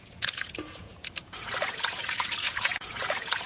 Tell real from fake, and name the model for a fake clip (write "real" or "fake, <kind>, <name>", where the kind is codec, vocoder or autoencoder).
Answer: fake, vocoder, Vocos